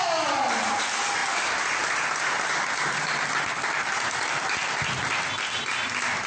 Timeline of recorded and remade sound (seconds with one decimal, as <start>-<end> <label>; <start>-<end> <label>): 0.0-6.3 recorded